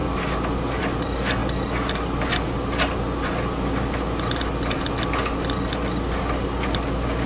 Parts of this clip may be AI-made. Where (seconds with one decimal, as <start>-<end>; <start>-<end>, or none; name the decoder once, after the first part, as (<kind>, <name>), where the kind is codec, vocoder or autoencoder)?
none